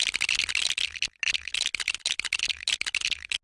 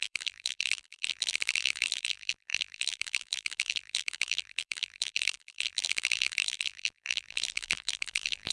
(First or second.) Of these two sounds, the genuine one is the first